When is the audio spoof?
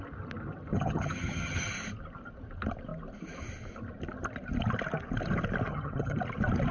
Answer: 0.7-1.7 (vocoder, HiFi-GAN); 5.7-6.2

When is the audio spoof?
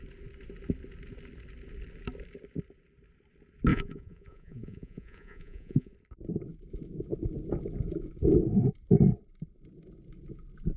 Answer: 3.7-5.9 (vocoder, Vocos)